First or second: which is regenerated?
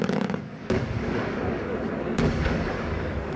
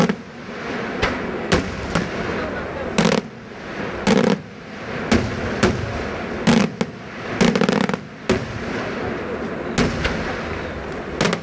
first